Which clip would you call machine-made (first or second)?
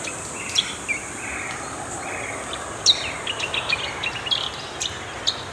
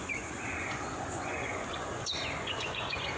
second